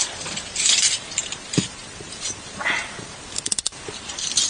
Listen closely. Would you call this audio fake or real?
fake